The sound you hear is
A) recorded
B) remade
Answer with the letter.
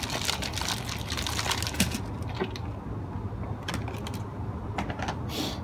A